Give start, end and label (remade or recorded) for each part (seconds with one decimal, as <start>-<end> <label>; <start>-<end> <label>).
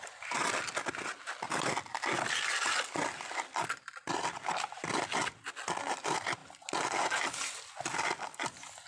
0.0-8.9 recorded